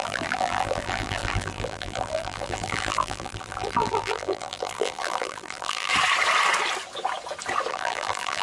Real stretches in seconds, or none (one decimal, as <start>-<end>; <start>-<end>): 5.9-7.7